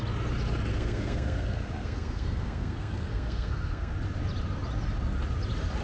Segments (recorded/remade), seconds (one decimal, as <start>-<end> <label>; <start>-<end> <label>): 0.0-0.7 recorded; 0.7-3.9 remade; 3.9-5.8 recorded